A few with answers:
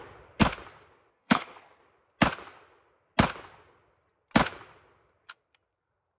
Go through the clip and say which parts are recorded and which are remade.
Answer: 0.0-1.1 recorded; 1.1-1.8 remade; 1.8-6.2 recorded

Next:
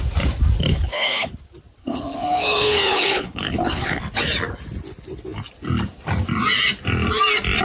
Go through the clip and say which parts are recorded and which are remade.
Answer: 0.0-0.7 recorded; 0.7-1.3 remade; 1.3-1.8 recorded; 1.8-4.0 remade; 4.0-7.6 recorded

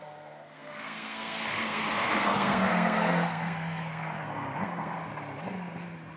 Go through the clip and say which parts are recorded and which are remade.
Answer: 0.0-5.1 remade; 5.1-6.2 recorded

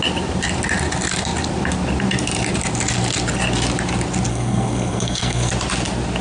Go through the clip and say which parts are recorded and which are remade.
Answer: 0.0-4.3 recorded; 4.3-5.5 remade; 5.5-6.2 recorded

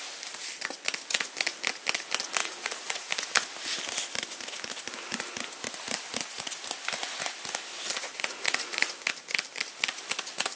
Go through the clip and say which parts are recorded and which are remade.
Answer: 0.0-2.4 recorded; 2.4-3.1 remade; 3.1-8.0 recorded; 8.0-8.9 remade; 8.9-10.6 recorded

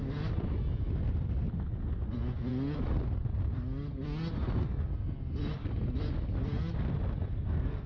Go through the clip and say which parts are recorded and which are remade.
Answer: 0.0-7.3 recorded; 7.3-7.9 remade

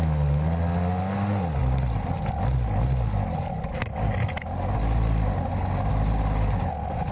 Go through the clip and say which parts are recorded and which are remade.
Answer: 0.0-7.1 recorded

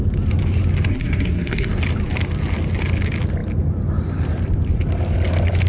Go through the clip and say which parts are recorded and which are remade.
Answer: 0.0-0.9 recorded; 0.9-1.7 remade; 1.7-5.7 recorded